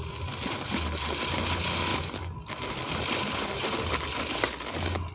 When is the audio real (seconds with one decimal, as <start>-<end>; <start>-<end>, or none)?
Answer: 0.0-1.9; 3.9-5.1